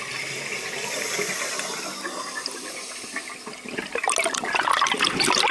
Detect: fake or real real